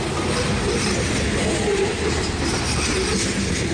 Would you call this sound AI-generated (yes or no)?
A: no